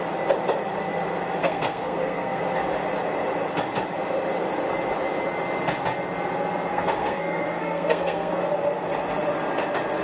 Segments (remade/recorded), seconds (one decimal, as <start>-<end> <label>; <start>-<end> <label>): 0.0-1.4 recorded; 1.4-2.4 remade; 2.4-6.7 recorded; 6.7-8.4 remade; 8.4-10.0 recorded